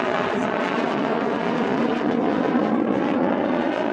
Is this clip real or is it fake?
fake